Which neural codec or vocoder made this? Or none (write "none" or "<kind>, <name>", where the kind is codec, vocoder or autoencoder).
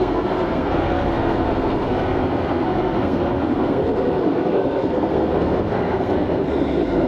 codec, SNAC